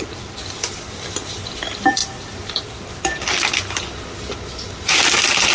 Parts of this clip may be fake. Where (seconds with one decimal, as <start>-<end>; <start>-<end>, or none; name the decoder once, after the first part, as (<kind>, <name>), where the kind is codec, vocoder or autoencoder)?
none